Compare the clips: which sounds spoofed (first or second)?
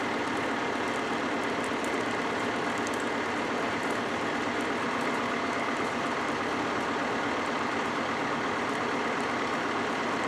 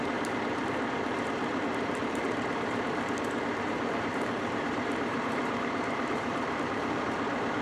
second